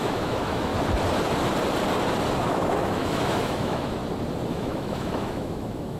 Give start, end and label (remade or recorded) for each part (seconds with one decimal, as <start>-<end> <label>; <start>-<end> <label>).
0.0-0.7 remade; 0.7-2.4 recorded; 2.4-4.0 remade; 4.0-4.5 recorded; 4.5-6.0 remade